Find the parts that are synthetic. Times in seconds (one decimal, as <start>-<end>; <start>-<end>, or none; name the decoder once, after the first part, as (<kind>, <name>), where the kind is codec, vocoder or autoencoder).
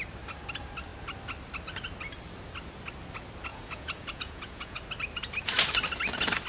3.5-4.8 (vocoder, Vocos)